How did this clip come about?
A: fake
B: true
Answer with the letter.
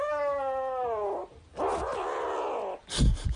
B